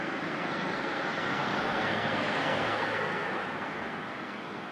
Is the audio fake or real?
fake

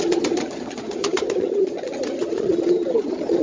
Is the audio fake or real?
fake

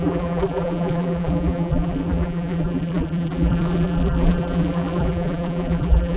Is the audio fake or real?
fake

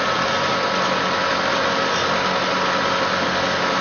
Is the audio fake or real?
real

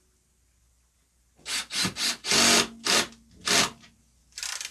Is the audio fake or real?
real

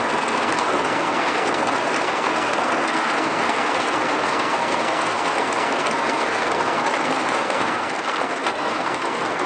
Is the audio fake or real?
fake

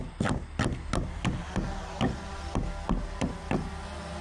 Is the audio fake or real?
real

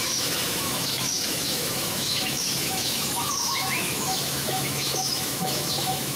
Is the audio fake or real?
fake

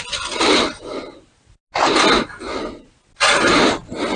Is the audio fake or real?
real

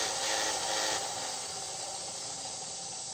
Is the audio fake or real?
real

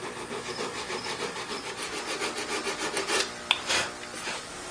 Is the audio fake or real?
real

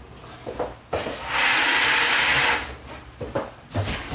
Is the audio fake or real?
real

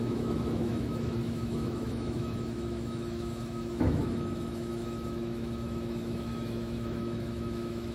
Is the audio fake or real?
fake